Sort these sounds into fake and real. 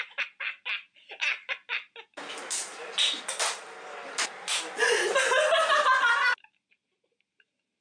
real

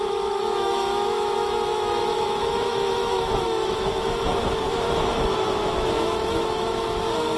fake